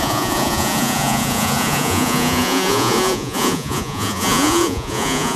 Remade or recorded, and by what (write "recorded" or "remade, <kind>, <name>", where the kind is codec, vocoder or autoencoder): remade, vocoder, Vocos